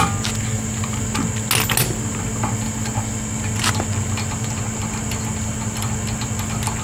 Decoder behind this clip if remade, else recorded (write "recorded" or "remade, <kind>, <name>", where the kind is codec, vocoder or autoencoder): recorded